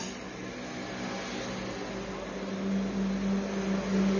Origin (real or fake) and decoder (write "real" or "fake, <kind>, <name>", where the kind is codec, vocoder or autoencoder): real